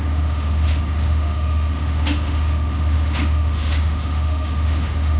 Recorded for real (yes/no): no